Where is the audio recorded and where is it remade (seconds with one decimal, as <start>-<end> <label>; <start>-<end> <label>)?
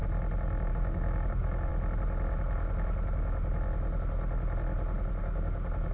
0.0-0.7 recorded; 0.7-1.7 remade; 1.7-5.2 recorded; 5.2-5.9 remade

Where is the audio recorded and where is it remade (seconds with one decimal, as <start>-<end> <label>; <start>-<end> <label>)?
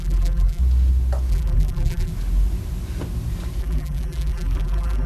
0.0-0.6 remade; 0.6-1.3 recorded; 1.3-2.1 remade; 2.1-3.6 recorded; 3.6-5.1 remade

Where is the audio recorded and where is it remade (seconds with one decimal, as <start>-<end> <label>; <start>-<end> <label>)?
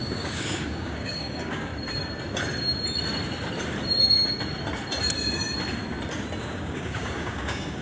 0.0-1.7 remade; 1.7-6.4 recorded; 6.4-7.8 remade